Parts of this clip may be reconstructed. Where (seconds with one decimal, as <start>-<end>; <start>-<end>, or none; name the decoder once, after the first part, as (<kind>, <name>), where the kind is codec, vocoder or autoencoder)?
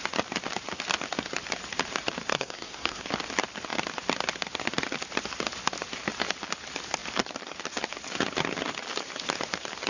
2.3-3.0 (codec, SNAC)